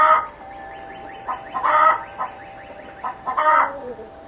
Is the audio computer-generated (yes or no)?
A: yes